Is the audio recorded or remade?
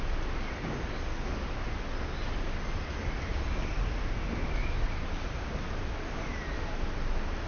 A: recorded